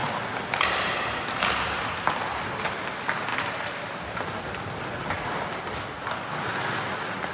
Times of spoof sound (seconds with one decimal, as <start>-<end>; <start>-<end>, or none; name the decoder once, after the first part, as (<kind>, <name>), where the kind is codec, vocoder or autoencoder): 3.3-5.8 (vocoder, BigVGAN v2)